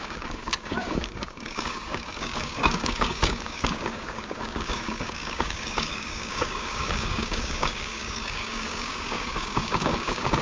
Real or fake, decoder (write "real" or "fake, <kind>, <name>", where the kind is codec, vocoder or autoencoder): fake, codec, DAC